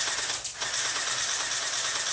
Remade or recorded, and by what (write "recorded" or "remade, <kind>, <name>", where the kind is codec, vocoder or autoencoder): recorded